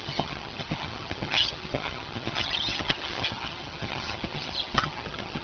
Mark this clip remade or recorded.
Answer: remade